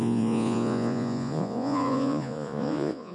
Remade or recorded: remade